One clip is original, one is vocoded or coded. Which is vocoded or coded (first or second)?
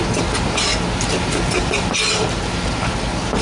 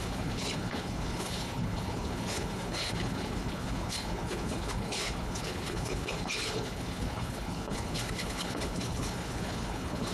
second